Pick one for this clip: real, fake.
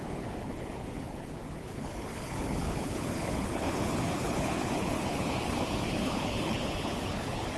fake